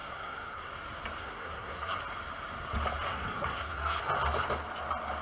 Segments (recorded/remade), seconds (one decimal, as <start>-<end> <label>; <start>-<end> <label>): 0.0-0.7 remade; 0.7-1.2 recorded; 1.2-2.0 remade; 2.0-3.1 recorded; 3.1-4.0 remade; 4.0-5.2 recorded